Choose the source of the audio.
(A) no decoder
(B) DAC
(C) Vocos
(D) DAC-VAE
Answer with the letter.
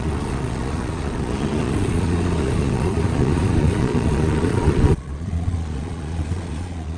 C